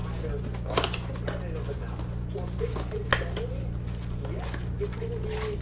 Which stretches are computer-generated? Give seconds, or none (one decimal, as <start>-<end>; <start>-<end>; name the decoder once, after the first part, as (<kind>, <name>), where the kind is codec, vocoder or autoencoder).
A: none